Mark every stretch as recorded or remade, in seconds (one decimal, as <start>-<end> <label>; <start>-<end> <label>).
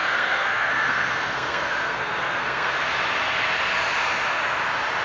0.0-2.9 remade; 2.9-5.0 recorded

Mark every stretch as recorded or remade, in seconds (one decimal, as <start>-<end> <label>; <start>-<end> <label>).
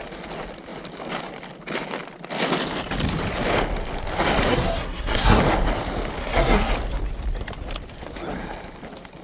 0.0-4.5 recorded; 4.5-5.4 remade; 5.4-6.2 recorded; 6.2-6.7 remade; 6.7-9.2 recorded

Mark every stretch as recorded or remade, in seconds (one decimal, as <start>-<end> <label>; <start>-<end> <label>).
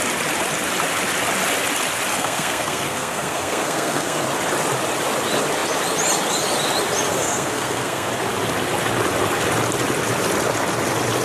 0.0-2.1 recorded; 2.1-4.2 remade; 4.2-7.1 recorded; 7.1-8.1 remade; 8.1-11.2 recorded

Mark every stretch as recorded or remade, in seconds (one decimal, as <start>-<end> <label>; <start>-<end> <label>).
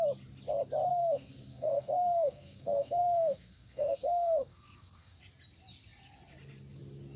0.0-0.9 recorded; 0.9-5.2 remade; 5.2-7.2 recorded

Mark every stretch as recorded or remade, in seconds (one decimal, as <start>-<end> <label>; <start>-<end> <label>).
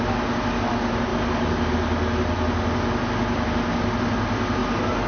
0.0-5.1 recorded